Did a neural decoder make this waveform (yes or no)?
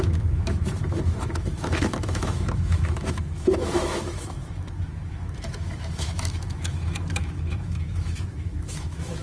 yes